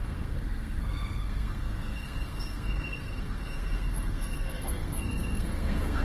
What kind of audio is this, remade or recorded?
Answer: remade